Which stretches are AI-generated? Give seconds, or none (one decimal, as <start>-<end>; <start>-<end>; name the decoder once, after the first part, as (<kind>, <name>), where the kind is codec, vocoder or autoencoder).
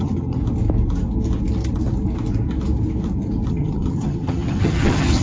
0.0-0.4 (vocoder, HiFi-GAN); 3.5-5.2